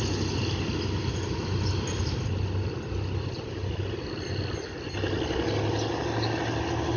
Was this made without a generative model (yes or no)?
yes